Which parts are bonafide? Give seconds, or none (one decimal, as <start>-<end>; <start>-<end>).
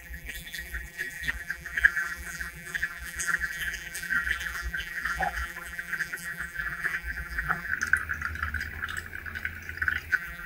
7.7-10.1